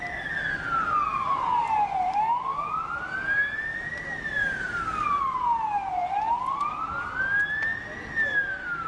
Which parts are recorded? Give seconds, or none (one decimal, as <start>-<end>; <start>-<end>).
0.0-8.9